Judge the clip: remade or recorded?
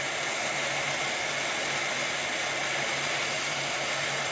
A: recorded